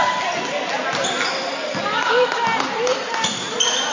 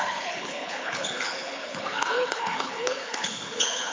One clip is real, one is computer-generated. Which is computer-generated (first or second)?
second